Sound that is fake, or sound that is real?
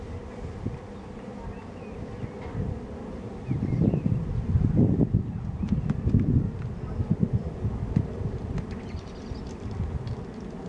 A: real